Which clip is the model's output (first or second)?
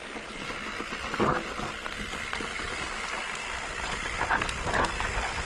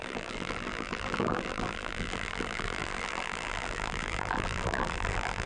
second